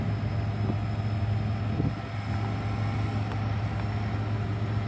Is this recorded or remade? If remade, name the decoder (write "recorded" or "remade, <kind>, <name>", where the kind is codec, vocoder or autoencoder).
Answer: recorded